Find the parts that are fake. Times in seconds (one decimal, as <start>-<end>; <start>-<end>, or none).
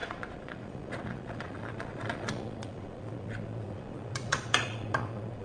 0.0-5.4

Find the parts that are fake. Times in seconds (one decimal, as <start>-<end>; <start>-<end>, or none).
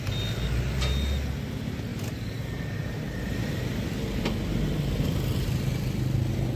1.9-4.2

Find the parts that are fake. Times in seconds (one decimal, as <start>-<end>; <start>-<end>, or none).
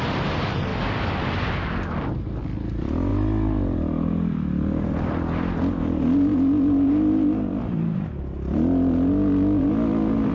0.7-1.5; 3.1-5.7; 6.3-9.7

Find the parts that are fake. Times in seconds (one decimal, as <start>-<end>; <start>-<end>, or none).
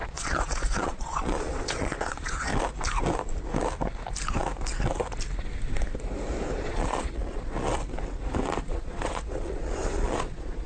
0.0-2.5; 6.7-7.7; 8.6-10.7